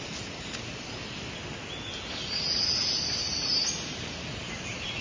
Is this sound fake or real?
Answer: real